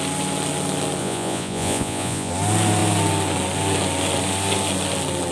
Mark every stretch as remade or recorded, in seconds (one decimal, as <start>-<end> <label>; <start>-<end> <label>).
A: 0.0-1.0 recorded; 1.0-2.3 remade; 2.3-5.3 recorded